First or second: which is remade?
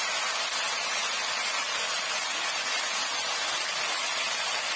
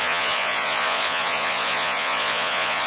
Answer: second